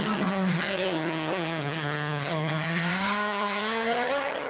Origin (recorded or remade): remade